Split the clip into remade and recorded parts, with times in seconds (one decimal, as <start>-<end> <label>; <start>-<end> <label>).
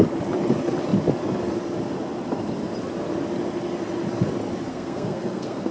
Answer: 0.0-4.7 recorded; 4.7-5.7 remade